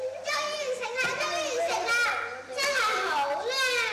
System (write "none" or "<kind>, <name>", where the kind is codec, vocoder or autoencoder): none